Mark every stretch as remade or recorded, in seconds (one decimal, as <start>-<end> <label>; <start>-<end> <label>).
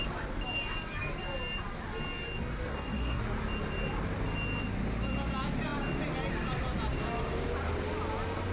0.0-2.7 recorded; 2.7-3.2 remade; 3.2-8.5 recorded